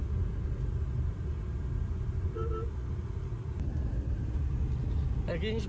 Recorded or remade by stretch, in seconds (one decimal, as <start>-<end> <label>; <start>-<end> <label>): 0.0-5.7 recorded